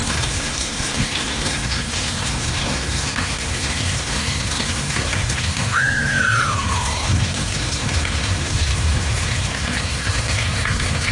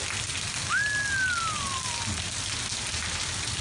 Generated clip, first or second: first